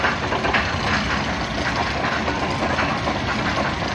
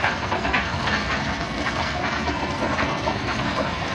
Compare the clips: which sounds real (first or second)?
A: first